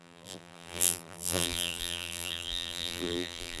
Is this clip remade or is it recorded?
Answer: remade